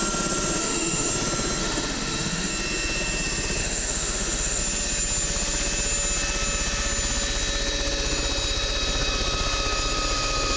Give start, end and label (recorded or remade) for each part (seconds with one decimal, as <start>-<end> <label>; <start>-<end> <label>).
0.0-0.6 recorded; 0.6-1.1 remade; 1.1-1.6 recorded; 1.6-2.5 remade; 2.5-3.6 recorded; 3.6-4.6 remade; 4.6-10.6 recorded